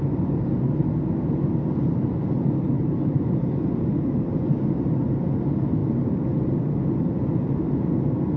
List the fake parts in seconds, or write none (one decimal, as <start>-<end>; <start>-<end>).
none